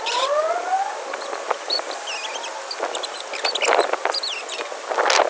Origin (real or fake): real